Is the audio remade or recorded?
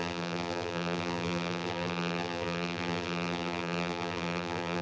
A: remade